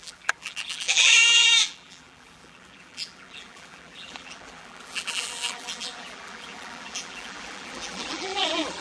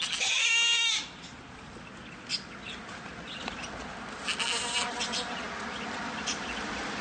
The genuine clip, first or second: second